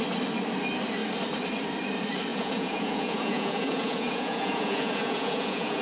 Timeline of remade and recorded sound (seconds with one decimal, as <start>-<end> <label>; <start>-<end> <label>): 0.0-2.3 recorded; 2.3-5.8 remade

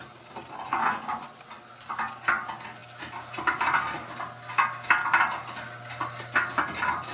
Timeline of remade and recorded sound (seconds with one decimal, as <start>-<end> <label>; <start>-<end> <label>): 0.0-0.7 recorded; 0.7-1.3 remade; 1.3-7.1 recorded

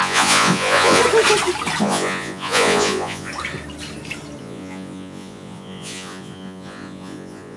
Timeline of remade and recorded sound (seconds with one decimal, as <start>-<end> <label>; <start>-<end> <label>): 0.0-1.0 remade; 1.0-1.8 recorded; 1.8-3.3 remade; 3.3-4.4 recorded; 4.4-7.6 remade

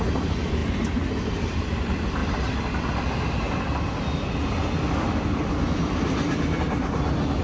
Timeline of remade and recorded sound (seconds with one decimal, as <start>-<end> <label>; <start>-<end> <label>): 0.0-7.4 recorded

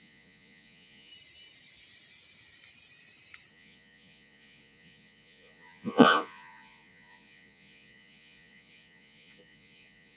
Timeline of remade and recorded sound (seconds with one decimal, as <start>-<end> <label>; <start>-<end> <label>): 0.0-1.1 remade; 1.1-3.5 recorded; 3.5-10.2 remade

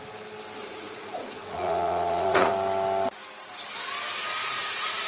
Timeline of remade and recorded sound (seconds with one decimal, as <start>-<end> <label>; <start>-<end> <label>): 0.0-0.6 recorded; 0.6-2.5 remade; 2.5-4.4 recorded; 4.4-5.1 remade

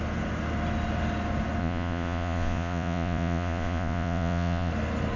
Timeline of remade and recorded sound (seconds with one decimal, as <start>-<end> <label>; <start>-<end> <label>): 0.0-1.6 recorded; 1.6-4.7 remade; 4.7-5.2 recorded

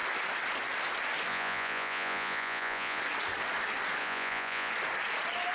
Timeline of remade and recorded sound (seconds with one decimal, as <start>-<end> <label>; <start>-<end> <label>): 0.0-1.3 recorded; 1.3-3.0 remade; 3.0-4.0 recorded; 4.0-4.7 remade; 4.7-5.5 recorded